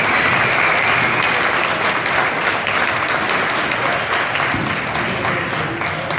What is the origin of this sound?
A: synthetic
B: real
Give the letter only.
B